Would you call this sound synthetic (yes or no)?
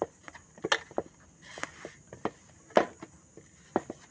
no